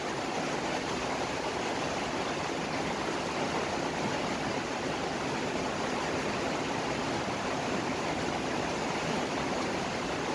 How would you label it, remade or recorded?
recorded